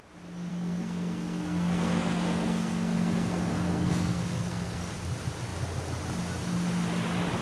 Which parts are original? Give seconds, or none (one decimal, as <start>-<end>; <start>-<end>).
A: 0.0-0.5; 4.9-7.4